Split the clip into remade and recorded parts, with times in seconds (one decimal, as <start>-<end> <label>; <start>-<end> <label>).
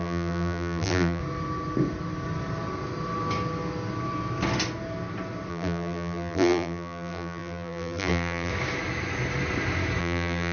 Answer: 0.0-1.2 remade; 1.2-5.5 recorded; 5.5-8.5 remade; 8.5-10.0 recorded; 10.0-10.5 remade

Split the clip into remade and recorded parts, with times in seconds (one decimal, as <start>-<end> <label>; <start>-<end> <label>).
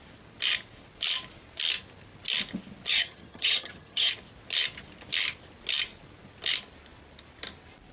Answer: 0.0-2.9 recorded; 2.9-4.1 remade; 4.1-7.9 recorded